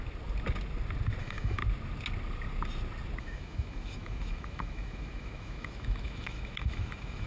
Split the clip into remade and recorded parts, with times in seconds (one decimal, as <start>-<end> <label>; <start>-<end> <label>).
0.0-1.2 recorded; 1.2-1.6 remade; 1.6-3.2 recorded; 3.2-7.3 remade

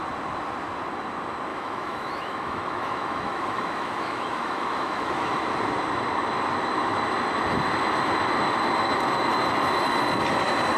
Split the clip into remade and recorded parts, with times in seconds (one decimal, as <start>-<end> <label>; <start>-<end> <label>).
0.0-1.5 recorded; 1.5-5.4 remade; 5.4-10.8 recorded

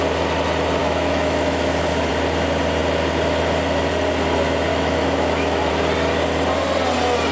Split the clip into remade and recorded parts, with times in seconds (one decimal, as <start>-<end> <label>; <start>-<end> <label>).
0.0-0.8 recorded; 0.8-2.1 remade; 2.1-4.7 recorded; 4.7-5.7 remade; 5.7-7.3 recorded

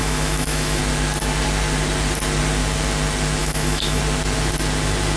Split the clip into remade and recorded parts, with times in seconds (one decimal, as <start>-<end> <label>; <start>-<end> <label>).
0.0-0.8 remade; 0.8-3.4 recorded; 3.4-4.0 remade; 4.0-5.2 recorded

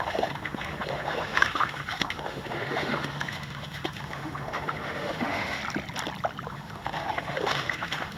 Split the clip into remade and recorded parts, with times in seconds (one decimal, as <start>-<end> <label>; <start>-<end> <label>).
0.0-5.6 remade; 5.6-6.5 recorded; 6.5-8.2 remade

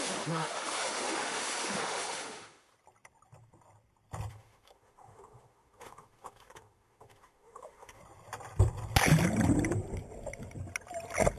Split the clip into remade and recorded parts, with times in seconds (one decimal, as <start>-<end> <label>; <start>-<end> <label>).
0.0-2.7 remade; 2.7-4.3 recorded; 4.3-8.0 remade; 8.0-11.4 recorded

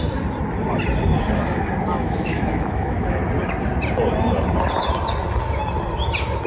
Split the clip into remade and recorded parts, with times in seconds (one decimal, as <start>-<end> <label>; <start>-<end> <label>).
0.0-1.9 recorded; 1.9-3.2 remade; 3.2-6.5 recorded

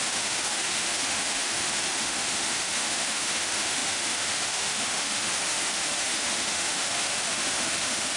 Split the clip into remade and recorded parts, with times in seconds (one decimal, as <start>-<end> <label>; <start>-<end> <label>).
0.0-8.2 remade